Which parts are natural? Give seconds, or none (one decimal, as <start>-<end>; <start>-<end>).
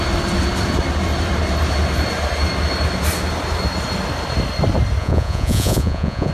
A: 0.0-5.0